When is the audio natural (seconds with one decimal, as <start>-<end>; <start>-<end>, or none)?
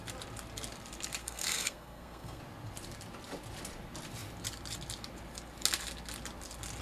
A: 0.0-1.2; 2.4-6.8